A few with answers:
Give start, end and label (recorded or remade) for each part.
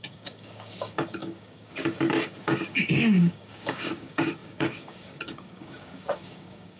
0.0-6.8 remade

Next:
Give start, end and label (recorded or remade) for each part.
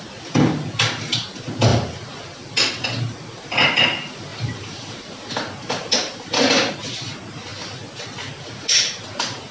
0.0-9.5 recorded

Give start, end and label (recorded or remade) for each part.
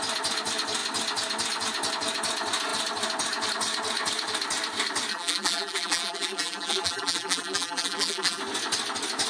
0.0-5.1 recorded; 5.1-8.4 remade; 8.4-9.3 recorded